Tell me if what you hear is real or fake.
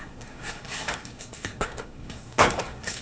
fake